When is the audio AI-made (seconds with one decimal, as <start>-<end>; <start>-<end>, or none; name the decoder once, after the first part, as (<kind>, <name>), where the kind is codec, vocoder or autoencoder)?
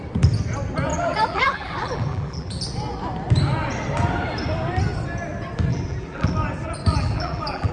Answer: 0.9-2.6 (vocoder, BigVGAN v2); 5.7-6.3; 6.9-7.7